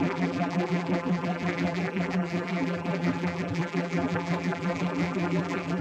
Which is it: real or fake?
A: fake